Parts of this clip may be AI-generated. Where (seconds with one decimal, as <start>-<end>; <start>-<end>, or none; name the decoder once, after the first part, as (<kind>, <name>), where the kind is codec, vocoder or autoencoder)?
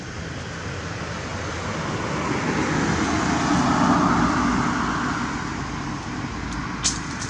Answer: none